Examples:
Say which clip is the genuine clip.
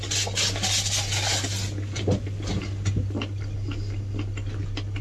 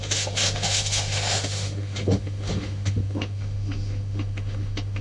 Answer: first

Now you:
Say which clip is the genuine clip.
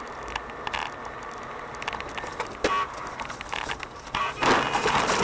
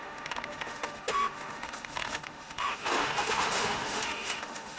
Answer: first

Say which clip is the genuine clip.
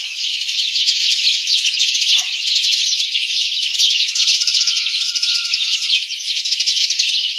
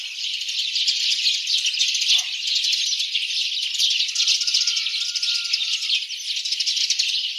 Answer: second